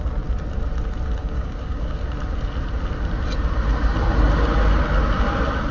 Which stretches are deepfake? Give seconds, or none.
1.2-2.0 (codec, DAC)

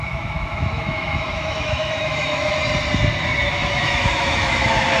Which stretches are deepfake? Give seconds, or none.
0.0-2.6 (autoencoder, DAC-VAE); 3.2-5.0

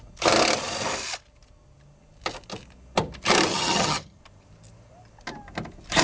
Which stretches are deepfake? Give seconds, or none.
3.5-4.2 (vocoder, HiFi-GAN)